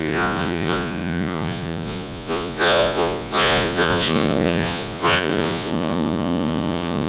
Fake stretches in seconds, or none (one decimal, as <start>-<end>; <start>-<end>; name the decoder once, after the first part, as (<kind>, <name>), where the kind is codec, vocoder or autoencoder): 0.0-7.1 (vocoder, Vocos)

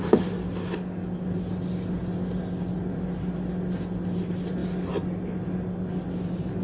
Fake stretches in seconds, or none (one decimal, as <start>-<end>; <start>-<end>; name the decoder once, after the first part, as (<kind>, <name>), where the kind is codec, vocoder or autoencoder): none

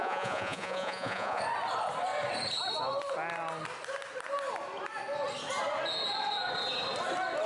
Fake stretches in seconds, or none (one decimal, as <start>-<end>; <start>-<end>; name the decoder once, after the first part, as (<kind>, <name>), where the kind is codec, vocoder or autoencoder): 0.0-1.4 (vocoder, Vocos)

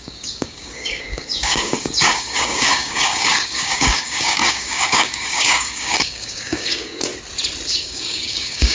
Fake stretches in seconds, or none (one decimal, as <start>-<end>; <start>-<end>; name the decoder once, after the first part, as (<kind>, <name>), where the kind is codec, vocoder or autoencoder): 0.0-7.1 (codec, DAC); 7.7-8.7

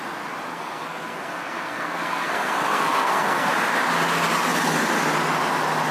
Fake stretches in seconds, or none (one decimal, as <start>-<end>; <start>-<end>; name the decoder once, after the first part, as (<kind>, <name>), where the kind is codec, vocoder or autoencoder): 0.5-3.5 (codec, SNAC)

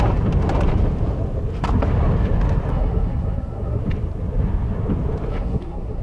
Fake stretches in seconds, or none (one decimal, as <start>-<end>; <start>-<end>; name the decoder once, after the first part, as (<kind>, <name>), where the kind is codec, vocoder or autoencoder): 2.7-3.8 (codec, SNAC); 5.3-6.0

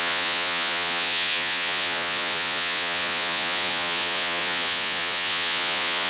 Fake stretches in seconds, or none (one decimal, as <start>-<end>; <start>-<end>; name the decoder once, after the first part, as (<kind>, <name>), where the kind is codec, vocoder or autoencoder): 0.0-6.1 (vocoder, Vocos)